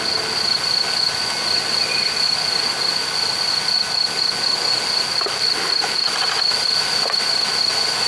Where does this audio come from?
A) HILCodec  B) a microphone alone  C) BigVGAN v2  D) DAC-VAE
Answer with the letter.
B